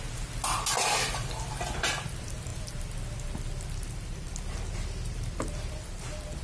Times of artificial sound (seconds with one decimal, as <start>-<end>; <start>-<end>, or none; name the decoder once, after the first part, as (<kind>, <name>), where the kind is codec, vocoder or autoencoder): none